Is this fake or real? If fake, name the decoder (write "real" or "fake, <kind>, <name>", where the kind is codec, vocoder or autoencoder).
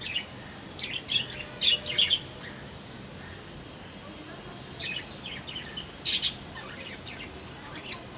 real